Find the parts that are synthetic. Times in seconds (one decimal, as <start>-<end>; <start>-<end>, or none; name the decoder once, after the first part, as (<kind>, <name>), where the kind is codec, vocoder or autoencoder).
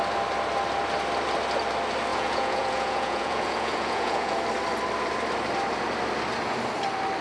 2.1-4.4 (vocoder, Vocos)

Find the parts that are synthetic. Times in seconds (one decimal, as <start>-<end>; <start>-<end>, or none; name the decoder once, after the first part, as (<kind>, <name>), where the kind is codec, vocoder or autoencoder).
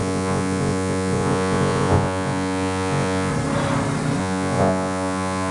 0.0-3.3 (vocoder, Vocos); 4.2-5.5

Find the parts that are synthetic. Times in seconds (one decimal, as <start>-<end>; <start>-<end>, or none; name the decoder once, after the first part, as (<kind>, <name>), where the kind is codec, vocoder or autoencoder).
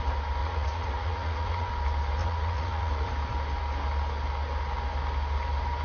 0.4-1.7 (vocoder, Vocos); 2.2-3.1